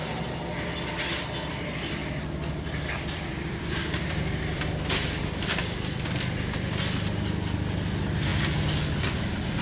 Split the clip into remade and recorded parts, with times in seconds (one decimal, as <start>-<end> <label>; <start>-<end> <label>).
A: 0.0-2.0 recorded; 2.0-6.8 remade; 6.8-9.6 recorded